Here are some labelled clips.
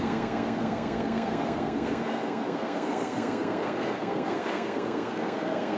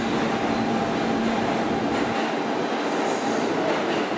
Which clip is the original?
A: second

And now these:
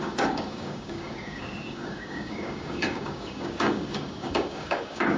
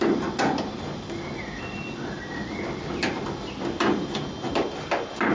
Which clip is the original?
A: second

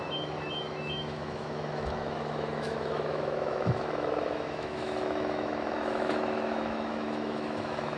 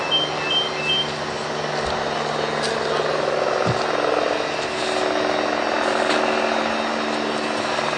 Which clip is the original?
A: second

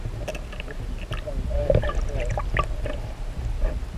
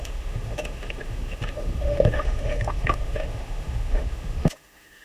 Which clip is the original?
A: first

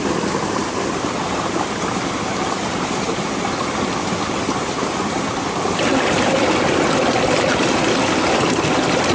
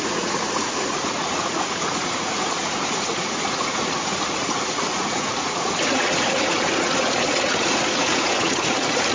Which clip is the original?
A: first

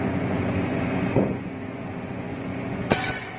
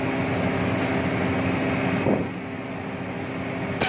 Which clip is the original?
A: second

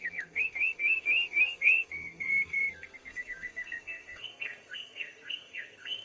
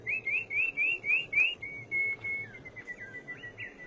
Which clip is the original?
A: second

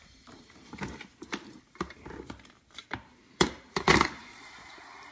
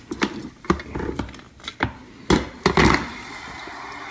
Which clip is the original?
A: second